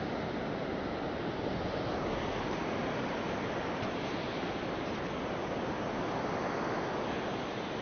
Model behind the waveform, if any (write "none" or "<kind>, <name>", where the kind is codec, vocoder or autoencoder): none